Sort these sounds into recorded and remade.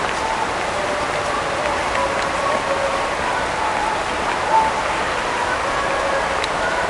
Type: recorded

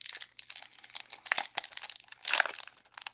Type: recorded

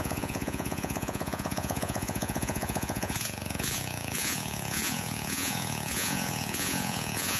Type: remade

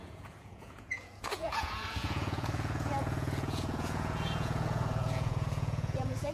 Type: remade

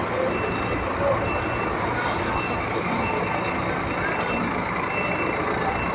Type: recorded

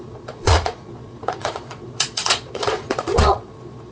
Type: remade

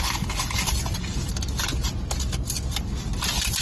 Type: recorded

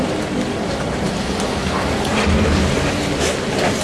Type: recorded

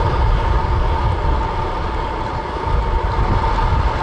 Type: recorded